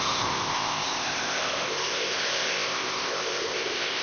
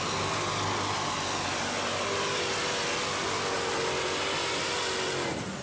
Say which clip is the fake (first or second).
first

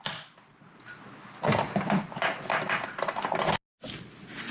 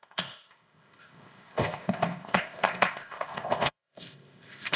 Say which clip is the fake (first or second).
second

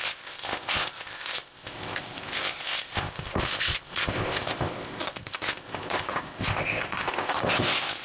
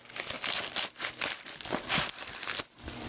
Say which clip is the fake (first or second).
first